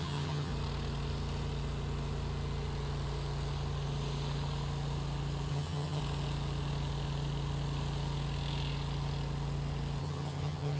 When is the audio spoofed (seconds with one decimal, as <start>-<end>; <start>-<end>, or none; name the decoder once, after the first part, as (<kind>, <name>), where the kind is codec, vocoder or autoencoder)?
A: 0.0-0.5 (vocoder, HiFi-GAN); 5.5-6.0; 10.0-10.8